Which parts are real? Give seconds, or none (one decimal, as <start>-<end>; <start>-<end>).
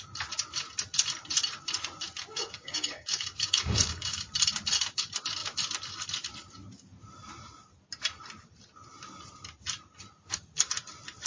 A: 0.0-2.3; 4.2-11.3